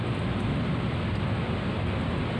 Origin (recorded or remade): recorded